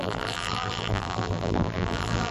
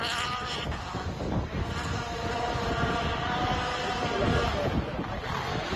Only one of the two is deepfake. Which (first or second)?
first